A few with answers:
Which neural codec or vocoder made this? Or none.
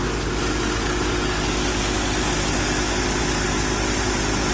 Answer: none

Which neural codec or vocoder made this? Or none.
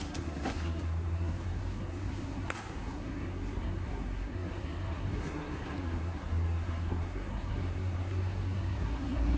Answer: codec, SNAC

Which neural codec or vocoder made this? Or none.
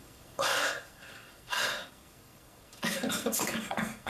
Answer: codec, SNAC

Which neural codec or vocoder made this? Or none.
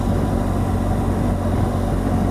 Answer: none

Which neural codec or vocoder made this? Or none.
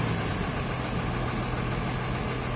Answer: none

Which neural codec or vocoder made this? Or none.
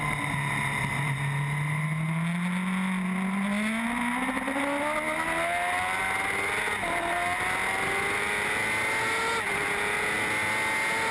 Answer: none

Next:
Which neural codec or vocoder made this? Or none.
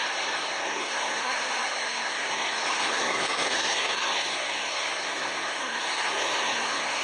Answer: codec, SNAC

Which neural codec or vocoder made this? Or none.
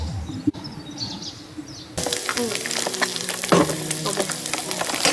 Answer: none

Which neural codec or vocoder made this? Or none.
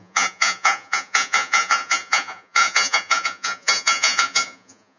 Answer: vocoder, Vocos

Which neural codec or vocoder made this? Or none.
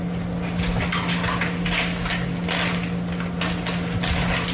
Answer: none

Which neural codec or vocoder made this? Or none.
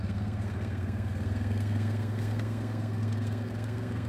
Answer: codec, SNAC